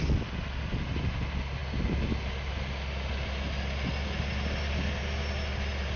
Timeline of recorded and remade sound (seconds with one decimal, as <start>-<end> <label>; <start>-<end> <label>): 0.0-6.0 recorded